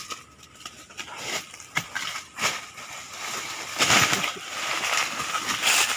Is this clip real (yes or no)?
yes